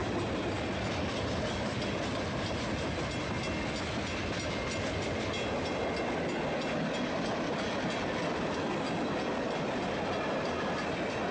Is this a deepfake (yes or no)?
no